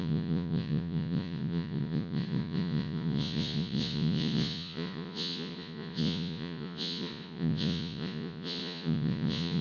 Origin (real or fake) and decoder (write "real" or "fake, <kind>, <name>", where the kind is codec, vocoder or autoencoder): fake, vocoder, Vocos